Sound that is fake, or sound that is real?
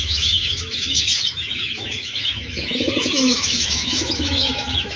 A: fake